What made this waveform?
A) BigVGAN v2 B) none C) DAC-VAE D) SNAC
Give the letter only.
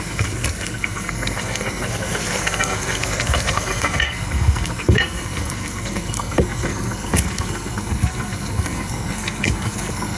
D